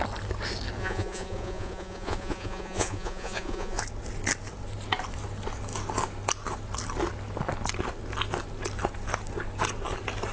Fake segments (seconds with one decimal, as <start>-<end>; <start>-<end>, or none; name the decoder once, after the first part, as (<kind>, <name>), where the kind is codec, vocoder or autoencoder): 0.8-3.8 (vocoder, Vocos)